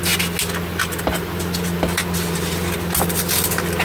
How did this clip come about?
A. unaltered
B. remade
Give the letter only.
A